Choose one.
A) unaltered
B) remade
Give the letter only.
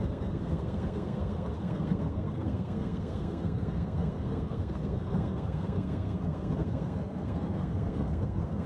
B